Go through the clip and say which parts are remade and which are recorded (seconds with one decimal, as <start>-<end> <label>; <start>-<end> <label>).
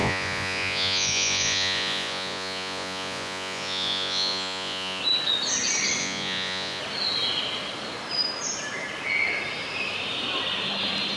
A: 0.0-5.0 remade; 5.0-6.0 recorded; 6.0-6.8 remade; 6.8-11.2 recorded